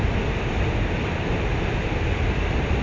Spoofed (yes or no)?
no